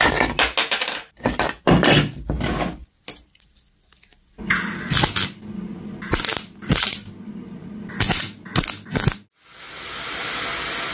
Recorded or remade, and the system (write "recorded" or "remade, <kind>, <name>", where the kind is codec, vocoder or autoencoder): recorded